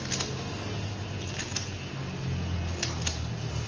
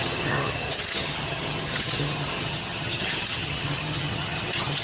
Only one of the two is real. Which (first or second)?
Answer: first